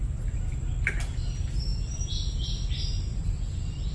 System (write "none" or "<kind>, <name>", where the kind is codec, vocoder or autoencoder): none